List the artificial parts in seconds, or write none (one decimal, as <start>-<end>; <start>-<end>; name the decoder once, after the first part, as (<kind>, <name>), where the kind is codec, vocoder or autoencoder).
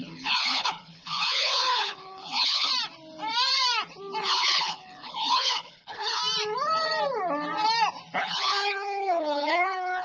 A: 0.0-2.7 (codec, HILCodec); 4.2-6.2; 8.2-10.0